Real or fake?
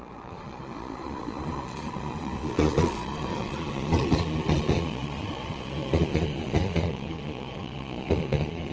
fake